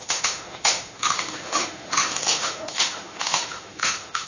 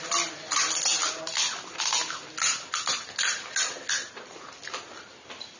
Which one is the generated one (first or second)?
first